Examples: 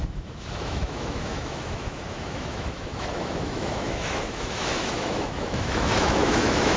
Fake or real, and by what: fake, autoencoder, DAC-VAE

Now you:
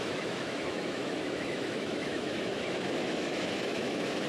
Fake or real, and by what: fake, autoencoder, DAC-VAE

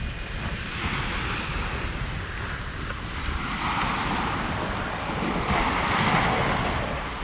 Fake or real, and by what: real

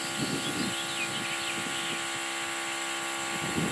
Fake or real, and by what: real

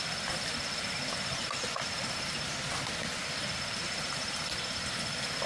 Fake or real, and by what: real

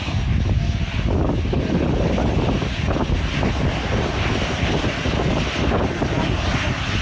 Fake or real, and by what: real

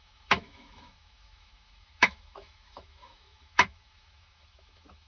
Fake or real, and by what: fake, autoencoder, DAC-VAE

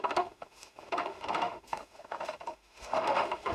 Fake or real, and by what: fake, autoencoder, DAC-VAE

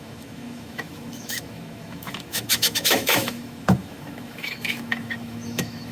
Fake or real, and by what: fake, autoencoder, DAC-VAE